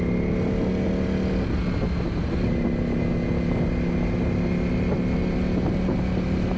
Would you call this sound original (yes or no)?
yes